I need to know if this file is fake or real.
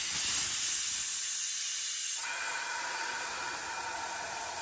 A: real